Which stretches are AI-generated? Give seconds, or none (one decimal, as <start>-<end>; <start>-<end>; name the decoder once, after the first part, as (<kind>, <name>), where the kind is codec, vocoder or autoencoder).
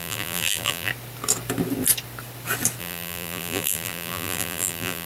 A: 0.0-0.9 (vocoder, BigVGAN v2); 2.8-5.1